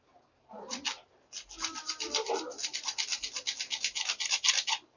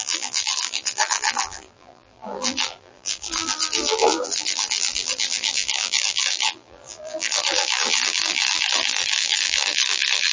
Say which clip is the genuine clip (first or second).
first